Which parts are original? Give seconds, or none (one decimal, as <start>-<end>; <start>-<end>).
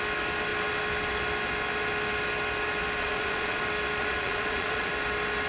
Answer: 0.0-3.0; 3.6-4.0; 4.9-5.5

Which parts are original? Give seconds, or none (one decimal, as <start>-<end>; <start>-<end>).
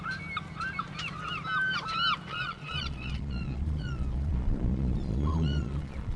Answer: 0.0-2.3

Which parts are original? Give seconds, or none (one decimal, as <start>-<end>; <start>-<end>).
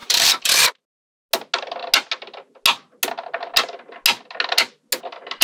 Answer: 0.7-5.4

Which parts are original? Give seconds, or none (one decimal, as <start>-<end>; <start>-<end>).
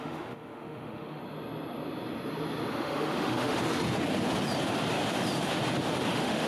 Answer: 1.2-2.7; 3.6-6.1